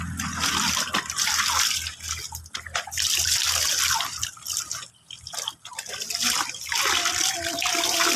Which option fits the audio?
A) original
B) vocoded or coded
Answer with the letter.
A